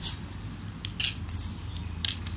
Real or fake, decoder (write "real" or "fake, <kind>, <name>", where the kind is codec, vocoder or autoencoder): real